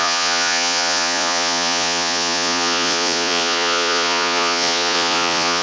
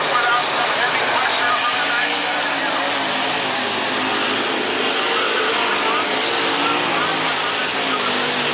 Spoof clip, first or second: first